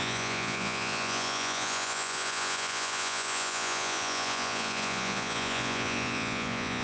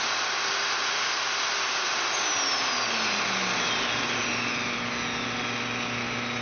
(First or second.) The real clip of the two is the second